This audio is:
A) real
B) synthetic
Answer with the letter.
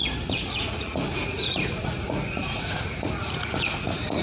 B